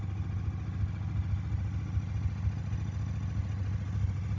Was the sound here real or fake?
real